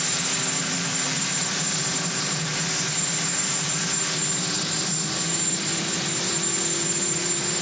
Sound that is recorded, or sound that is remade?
remade